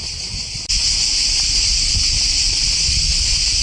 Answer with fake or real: real